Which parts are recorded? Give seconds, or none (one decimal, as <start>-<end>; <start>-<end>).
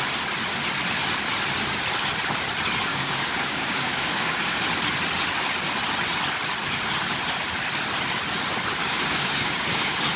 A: 0.0-2.9; 4.6-8.8